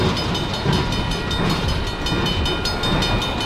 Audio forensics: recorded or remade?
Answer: recorded